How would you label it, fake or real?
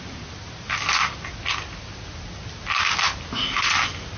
real